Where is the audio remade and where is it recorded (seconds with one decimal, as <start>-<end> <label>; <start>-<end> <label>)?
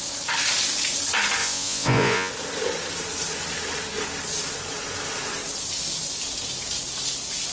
0.0-1.4 recorded; 1.4-2.3 remade; 2.3-7.5 recorded